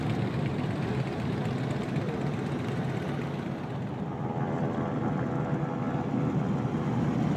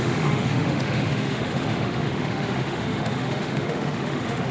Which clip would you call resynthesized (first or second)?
second